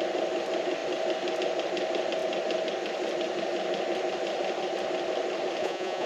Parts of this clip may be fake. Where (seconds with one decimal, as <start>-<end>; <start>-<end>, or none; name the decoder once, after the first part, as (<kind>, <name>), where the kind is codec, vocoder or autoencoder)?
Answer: 5.6-6.1 (vocoder, Vocos)